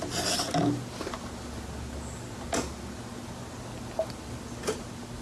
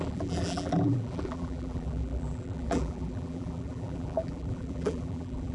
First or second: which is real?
first